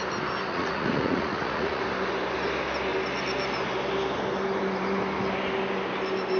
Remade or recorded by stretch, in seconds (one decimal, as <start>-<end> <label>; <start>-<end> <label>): 0.0-0.5 recorded; 0.5-1.8 remade; 1.8-6.4 recorded

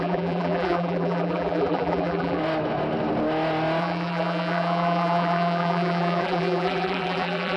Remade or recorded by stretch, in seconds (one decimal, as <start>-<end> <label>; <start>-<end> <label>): 0.0-2.4 remade; 2.4-3.8 recorded; 3.8-7.6 remade

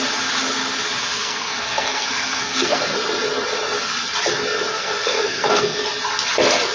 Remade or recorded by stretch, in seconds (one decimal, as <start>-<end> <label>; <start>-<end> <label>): 0.0-1.0 recorded; 1.0-2.8 remade; 2.8-4.7 recorded; 4.7-5.8 remade; 5.8-6.7 recorded

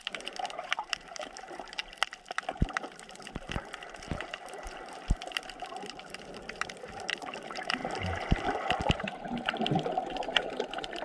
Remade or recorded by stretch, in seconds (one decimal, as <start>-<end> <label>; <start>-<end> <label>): 0.0-1.8 remade; 1.8-4.1 recorded; 4.1-7.8 remade; 7.8-8.8 recorded; 8.8-11.0 remade